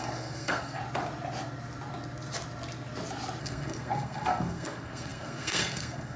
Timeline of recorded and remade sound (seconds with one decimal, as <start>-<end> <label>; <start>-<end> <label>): 0.0-0.8 remade; 0.8-3.4 recorded; 3.4-6.2 remade